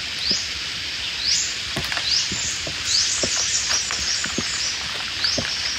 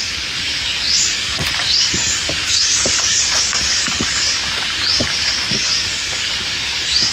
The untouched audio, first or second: first